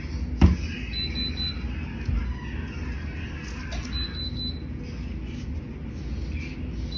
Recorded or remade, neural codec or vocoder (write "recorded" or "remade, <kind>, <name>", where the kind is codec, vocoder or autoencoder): recorded